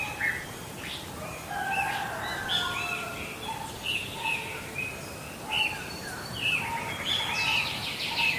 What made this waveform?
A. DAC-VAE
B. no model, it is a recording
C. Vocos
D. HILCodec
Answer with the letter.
B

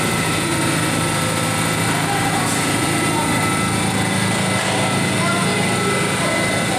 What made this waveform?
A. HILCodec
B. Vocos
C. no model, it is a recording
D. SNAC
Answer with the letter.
C